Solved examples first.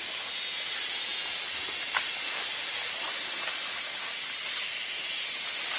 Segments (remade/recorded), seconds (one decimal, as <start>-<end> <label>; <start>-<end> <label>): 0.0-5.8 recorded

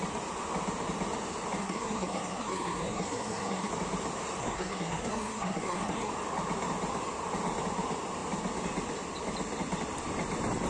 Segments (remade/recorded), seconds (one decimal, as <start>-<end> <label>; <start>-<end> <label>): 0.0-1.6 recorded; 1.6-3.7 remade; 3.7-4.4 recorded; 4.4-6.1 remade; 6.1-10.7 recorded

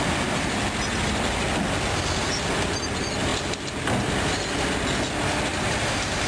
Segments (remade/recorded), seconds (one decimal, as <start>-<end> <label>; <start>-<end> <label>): 0.0-5.5 recorded; 5.5-6.3 remade

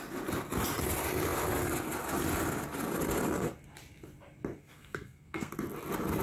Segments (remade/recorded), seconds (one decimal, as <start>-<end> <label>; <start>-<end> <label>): 0.0-4.6 recorded; 4.6-5.5 remade; 5.5-6.2 recorded

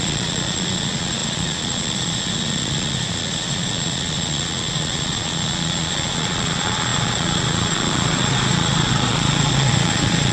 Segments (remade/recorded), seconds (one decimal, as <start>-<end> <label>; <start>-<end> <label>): 0.0-10.3 remade

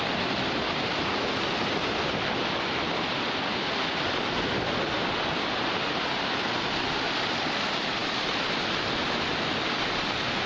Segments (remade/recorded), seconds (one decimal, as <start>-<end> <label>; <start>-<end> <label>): 0.0-10.5 recorded

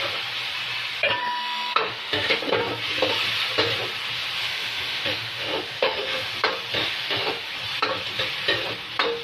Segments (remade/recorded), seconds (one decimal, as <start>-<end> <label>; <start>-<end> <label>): 0.0-1.2 recorded; 1.2-2.4 remade; 2.4-4.4 recorded; 4.4-6.3 remade; 6.3-6.8 recorded; 6.8-7.5 remade; 7.5-9.2 recorded

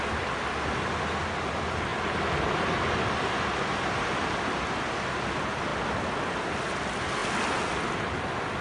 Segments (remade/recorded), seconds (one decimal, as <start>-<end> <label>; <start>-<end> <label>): 0.0-8.6 recorded